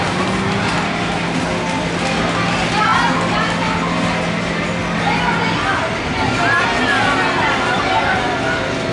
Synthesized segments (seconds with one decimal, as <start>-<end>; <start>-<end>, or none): none